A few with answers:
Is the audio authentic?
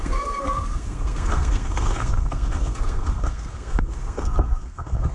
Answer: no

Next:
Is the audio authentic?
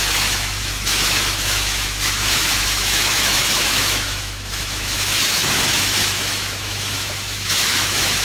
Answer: no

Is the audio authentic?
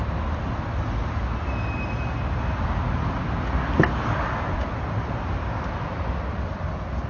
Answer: yes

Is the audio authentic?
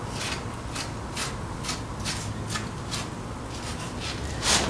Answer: yes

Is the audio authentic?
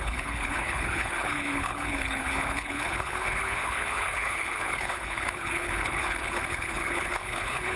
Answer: no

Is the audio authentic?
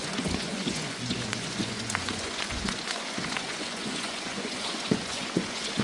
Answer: no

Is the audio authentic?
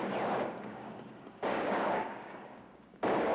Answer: no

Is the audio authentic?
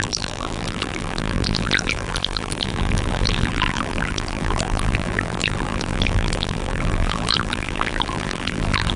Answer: no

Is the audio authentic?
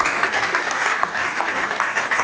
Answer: no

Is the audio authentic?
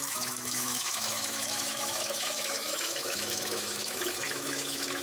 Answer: no